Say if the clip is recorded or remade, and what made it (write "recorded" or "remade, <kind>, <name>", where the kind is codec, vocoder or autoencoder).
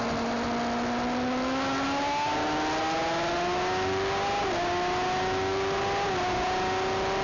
recorded